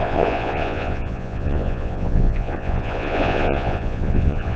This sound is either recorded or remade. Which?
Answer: remade